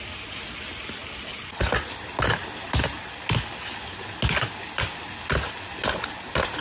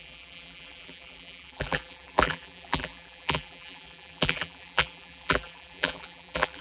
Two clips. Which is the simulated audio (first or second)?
second